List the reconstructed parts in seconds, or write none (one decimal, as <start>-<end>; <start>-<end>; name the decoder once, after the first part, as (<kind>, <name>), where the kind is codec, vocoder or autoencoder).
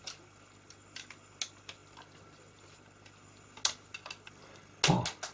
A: none